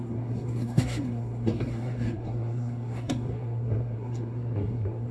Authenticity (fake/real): fake